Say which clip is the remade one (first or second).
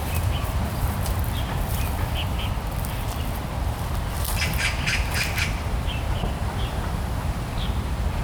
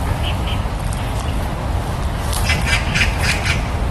first